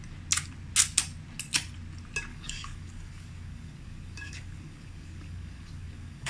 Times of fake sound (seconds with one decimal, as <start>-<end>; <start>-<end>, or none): 2.3-6.3